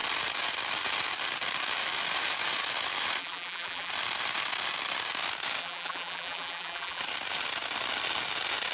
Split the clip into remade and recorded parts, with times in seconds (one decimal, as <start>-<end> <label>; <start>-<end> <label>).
0.0-3.2 recorded; 3.2-3.9 remade; 3.9-5.6 recorded; 5.6-7.0 remade; 7.0-8.7 recorded